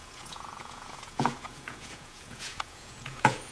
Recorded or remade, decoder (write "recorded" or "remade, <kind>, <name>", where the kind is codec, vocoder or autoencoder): remade, vocoder, Vocos